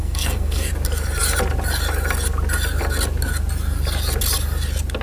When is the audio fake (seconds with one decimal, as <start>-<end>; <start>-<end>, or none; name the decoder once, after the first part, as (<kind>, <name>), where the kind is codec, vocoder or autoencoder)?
0.0-0.7 (codec, SNAC)